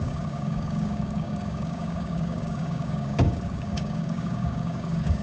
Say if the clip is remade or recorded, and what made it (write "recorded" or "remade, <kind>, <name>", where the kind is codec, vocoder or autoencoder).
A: remade, codec, DAC